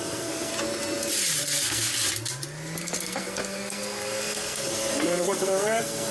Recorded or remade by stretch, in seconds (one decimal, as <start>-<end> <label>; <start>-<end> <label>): 0.0-0.5 remade; 0.5-1.4 recorded; 1.4-1.9 remade; 1.9-2.8 recorded; 2.8-6.1 remade